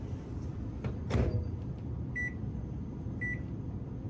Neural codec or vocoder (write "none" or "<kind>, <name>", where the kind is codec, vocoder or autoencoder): none